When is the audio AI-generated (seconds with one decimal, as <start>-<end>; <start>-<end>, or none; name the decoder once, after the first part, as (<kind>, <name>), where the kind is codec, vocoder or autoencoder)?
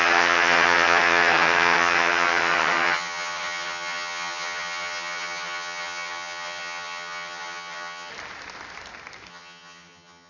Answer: 0.0-8.1 (vocoder, HiFi-GAN); 9.3-10.3